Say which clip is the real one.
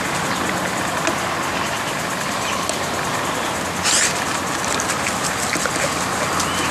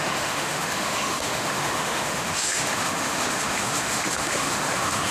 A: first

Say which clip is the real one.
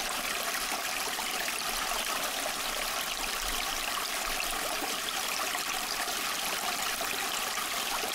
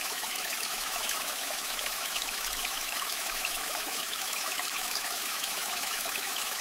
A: first